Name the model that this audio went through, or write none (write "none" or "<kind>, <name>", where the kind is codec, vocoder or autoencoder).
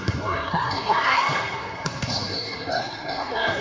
codec, SNAC